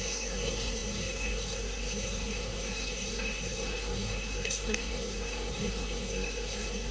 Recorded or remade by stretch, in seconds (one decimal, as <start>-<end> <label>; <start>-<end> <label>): 0.0-6.9 remade